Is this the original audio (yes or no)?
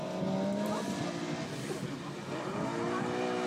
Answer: yes